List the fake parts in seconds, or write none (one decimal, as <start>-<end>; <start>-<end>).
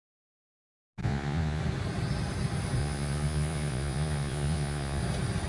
1.0-1.6; 2.8-5.0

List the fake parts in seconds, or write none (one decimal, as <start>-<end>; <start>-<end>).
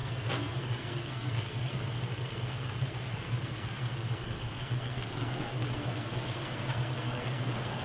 0.0-7.8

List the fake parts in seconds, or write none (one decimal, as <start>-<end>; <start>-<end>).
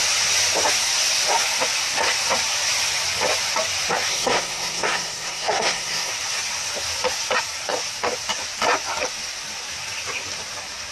4.1-6.1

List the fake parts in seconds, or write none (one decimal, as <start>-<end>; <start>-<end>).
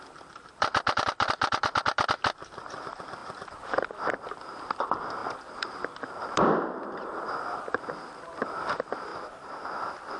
0.0-9.1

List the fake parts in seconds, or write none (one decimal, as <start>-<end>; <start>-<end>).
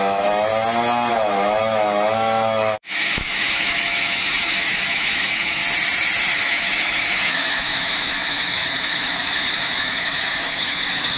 0.0-0.5; 1.1-5.6; 6.3-11.2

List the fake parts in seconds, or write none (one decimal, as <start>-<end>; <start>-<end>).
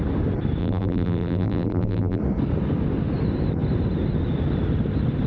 0.6-2.2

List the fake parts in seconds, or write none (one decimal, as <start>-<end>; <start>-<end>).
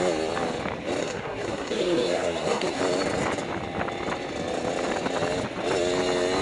1.0-2.8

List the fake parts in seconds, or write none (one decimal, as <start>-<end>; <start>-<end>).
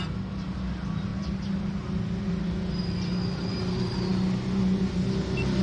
none